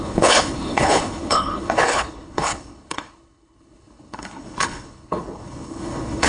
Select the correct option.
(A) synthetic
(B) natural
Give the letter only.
A